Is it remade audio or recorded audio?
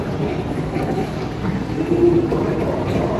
recorded